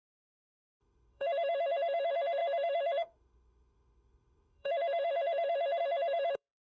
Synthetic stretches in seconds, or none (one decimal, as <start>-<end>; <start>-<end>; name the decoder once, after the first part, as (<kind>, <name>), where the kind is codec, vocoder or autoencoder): 0.0-6.6 (autoencoder, DAC-VAE)